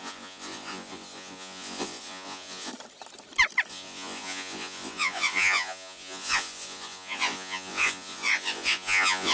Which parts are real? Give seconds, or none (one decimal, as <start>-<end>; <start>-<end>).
2.7-3.7